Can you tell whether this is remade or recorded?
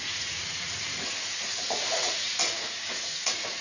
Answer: remade